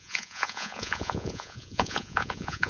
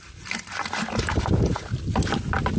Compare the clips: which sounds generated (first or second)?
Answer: first